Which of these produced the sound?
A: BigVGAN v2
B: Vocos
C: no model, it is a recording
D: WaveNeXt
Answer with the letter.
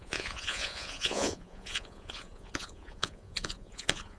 B